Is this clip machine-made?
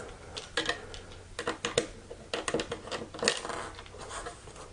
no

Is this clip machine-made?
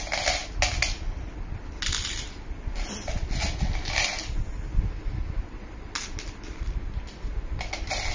no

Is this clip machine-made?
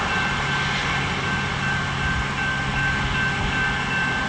no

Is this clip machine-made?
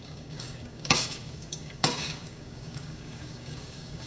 yes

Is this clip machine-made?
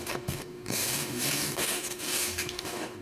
yes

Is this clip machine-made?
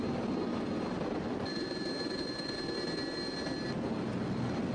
no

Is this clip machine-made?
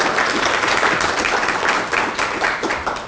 no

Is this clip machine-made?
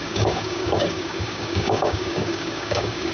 yes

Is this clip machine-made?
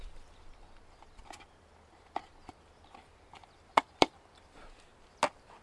no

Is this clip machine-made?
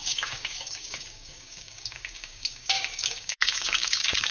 yes